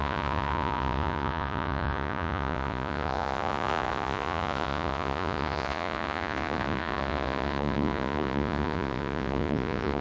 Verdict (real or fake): fake